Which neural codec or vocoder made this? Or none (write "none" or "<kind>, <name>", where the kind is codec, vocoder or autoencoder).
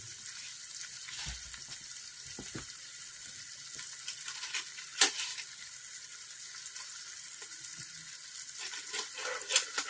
none